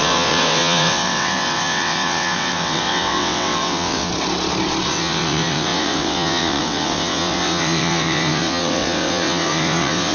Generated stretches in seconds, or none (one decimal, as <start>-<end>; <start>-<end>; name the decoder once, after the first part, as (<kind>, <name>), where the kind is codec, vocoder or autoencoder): 0.0-4.1 (vocoder, WaveNeXt); 4.9-10.1